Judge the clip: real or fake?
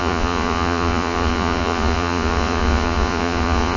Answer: fake